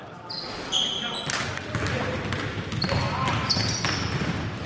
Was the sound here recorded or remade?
recorded